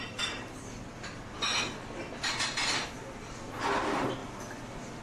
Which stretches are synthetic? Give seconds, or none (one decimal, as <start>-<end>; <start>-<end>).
1.5-3.4; 4.2-5.0